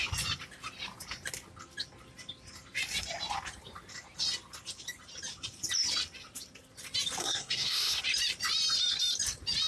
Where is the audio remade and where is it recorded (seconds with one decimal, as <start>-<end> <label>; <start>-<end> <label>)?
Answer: 0.0-7.2 recorded; 7.2-8.0 remade; 8.0-9.7 recorded